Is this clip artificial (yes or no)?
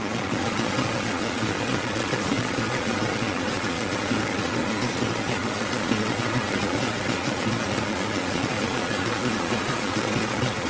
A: yes